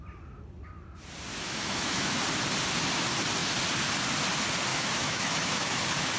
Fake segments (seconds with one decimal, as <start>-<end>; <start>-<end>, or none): 1.3-2.2; 4.7-5.8